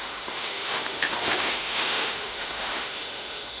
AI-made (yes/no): yes